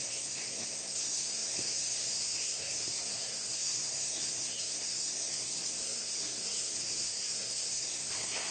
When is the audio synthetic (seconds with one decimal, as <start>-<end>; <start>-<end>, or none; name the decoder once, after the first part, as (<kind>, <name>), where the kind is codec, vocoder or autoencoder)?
0.0-8.5 (codec, SNAC)